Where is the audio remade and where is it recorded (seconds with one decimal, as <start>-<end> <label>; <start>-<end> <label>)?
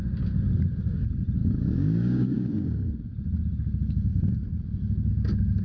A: 0.0-1.4 recorded; 1.4-2.9 remade; 2.9-5.6 recorded